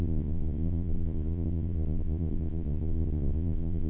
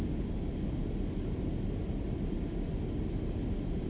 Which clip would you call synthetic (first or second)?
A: first